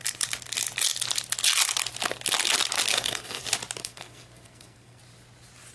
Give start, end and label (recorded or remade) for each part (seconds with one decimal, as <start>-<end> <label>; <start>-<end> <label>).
0.0-2.9 recorded; 2.9-3.4 remade; 3.4-3.8 recorded; 3.8-5.0 remade; 5.0-5.7 recorded